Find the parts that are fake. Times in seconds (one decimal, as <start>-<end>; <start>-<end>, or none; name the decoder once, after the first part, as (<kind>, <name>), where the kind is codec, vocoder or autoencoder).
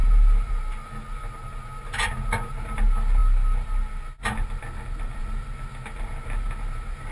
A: none